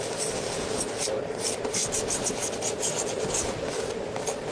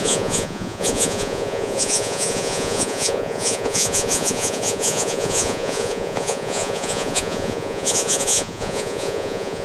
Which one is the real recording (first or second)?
first